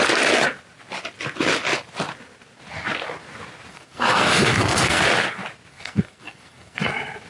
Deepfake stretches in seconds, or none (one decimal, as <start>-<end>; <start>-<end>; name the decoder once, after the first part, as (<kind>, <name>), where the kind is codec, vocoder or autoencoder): 3.7-5.0 (codec, SNAC); 5.7-6.8